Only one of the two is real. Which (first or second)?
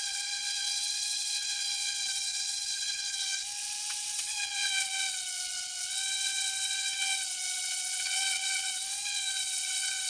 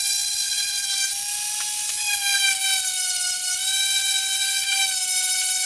second